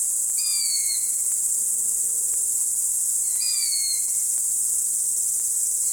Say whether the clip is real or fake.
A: fake